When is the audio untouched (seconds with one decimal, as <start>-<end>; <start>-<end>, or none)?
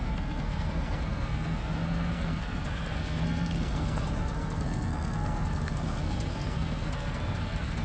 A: none